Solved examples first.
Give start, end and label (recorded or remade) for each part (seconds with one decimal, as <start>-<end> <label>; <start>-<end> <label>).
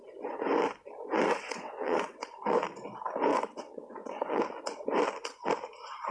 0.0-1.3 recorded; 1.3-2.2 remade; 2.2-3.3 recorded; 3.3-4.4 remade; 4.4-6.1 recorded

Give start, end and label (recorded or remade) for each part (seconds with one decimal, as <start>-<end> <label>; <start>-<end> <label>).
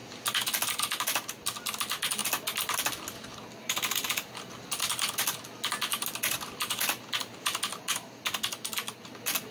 0.0-9.5 recorded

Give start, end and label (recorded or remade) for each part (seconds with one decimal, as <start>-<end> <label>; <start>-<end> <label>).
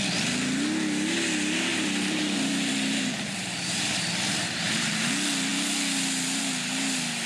0.0-1.7 recorded; 1.7-5.1 remade; 5.1-7.3 recorded